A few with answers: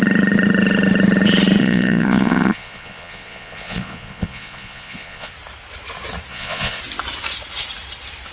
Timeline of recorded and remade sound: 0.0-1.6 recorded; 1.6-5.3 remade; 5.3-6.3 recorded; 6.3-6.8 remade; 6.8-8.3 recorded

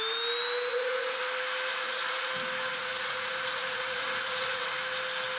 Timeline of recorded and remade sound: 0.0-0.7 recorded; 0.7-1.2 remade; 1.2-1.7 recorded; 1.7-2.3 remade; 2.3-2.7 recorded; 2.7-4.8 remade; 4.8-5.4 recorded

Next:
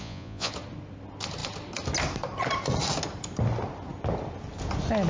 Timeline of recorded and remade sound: 0.0-0.5 remade; 0.5-5.1 recorded

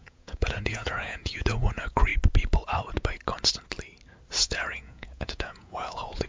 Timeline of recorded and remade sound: 0.0-2.1 remade; 2.1-4.4 recorded; 4.4-6.3 remade

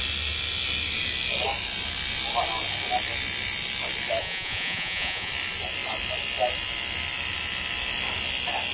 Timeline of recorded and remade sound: 0.0-4.2 recorded; 4.2-5.3 remade; 5.3-8.7 recorded

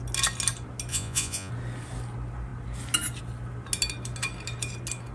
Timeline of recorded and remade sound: 0.0-0.9 recorded; 0.9-1.5 remade; 1.5-5.1 recorded